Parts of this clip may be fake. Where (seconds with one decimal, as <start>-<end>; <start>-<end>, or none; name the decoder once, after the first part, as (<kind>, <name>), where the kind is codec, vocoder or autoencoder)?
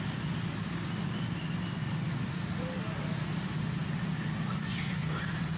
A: none